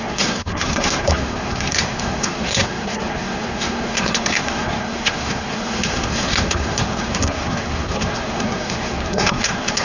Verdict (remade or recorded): remade